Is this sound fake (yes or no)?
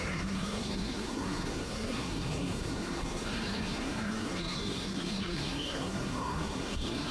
yes